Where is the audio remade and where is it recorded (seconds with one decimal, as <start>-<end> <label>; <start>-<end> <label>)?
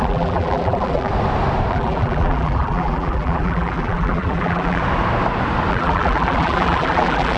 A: 0.0-1.1 remade; 1.1-1.7 recorded; 1.7-4.8 remade; 4.8-5.7 recorded; 5.7-7.4 remade